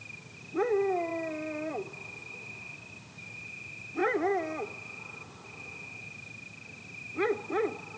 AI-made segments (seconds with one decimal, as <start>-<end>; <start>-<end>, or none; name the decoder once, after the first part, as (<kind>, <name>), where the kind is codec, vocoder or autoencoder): none